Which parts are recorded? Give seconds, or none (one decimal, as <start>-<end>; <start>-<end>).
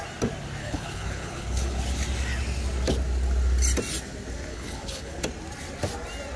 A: 0.0-0.6; 1.8-4.5; 5.2-6.4